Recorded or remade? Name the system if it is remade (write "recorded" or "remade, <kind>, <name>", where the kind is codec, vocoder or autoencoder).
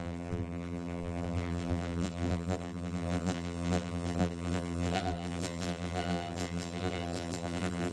remade, vocoder, BigVGAN v2